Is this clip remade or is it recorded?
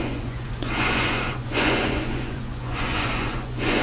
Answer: remade